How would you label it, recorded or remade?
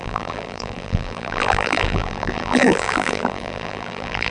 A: remade